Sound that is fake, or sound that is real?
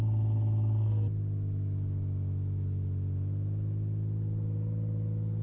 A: real